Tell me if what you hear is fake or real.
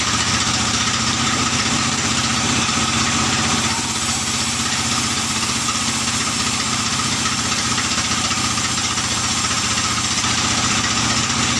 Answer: fake